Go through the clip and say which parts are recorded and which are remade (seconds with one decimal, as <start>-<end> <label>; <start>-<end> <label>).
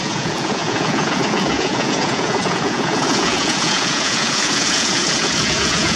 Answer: 0.0-6.0 remade